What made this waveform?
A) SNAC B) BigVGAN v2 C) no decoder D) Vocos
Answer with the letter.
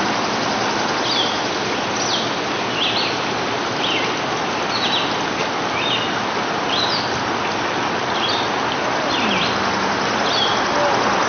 C